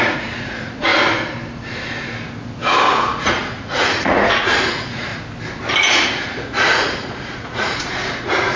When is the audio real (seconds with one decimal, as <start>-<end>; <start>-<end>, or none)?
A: 0.9-2.9; 5.1-5.8